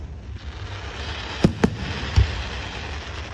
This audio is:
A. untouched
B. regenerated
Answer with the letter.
A